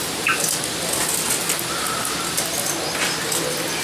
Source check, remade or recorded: recorded